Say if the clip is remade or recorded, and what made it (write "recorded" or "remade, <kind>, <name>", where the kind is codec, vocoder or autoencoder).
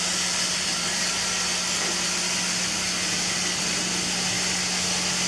recorded